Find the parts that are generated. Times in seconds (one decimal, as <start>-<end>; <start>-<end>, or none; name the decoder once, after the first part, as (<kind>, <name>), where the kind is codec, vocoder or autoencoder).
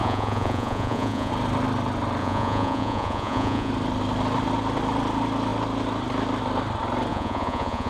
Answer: 0.0-1.3 (vocoder, Vocos); 2.2-3.7; 7.1-7.9